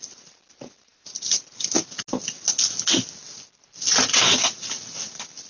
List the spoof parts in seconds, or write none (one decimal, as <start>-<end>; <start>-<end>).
none

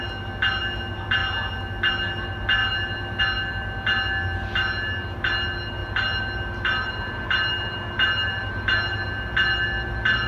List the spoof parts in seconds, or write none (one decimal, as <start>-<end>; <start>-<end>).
none

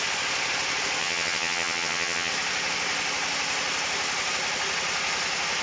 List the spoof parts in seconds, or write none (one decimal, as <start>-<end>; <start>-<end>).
1.0-2.3

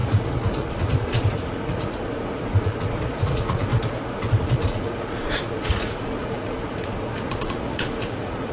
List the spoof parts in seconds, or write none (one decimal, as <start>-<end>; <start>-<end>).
0.0-3.7; 4.4-8.5

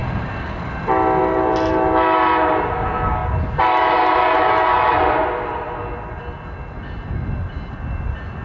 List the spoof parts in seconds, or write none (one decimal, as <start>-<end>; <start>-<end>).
none

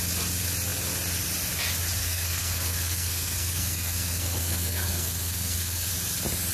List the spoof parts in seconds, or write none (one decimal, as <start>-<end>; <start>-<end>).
2.0-5.9